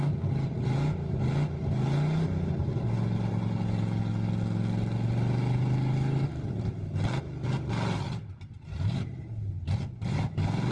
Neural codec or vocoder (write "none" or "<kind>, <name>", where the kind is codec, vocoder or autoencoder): none